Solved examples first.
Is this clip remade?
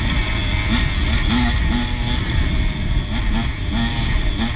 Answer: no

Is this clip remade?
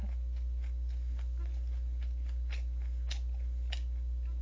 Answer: no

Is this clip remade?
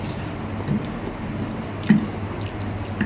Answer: no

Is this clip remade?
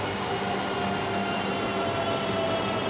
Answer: no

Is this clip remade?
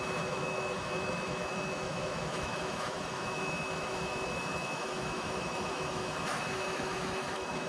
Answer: yes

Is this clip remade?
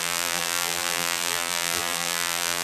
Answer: yes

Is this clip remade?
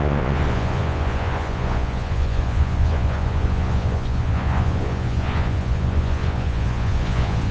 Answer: yes